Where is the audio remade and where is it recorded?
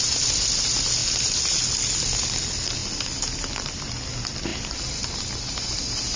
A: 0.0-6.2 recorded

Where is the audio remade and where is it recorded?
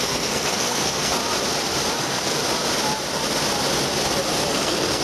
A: 0.0-1.2 remade; 1.2-2.0 recorded; 2.0-2.4 remade; 2.4-4.5 recorded; 4.5-5.0 remade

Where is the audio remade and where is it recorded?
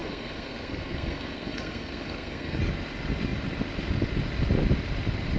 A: 0.0-2.6 remade; 2.6-5.4 recorded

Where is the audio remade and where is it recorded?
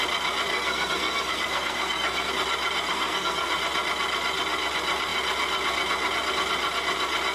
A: 0.0-0.5 recorded; 0.5-2.3 remade; 2.3-2.9 recorded; 2.9-3.5 remade; 3.5-7.3 recorded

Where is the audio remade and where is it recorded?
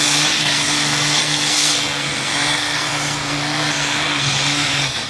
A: 0.0-5.1 remade